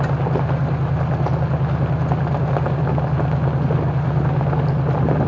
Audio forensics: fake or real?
real